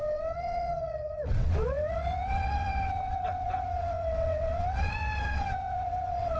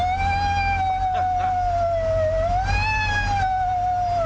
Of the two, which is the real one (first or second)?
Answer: second